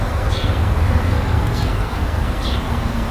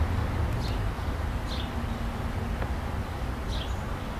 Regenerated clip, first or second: first